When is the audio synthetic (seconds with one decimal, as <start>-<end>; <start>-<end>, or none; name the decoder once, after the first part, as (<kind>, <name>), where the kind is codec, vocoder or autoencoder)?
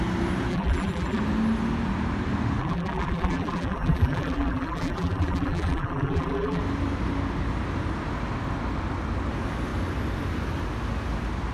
0.5-1.2 (vocoder, BigVGAN v2); 2.6-6.6